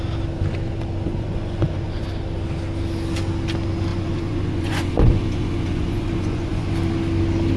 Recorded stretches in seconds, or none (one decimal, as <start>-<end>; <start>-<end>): 0.0-1.1; 2.0-3.9; 6.7-7.6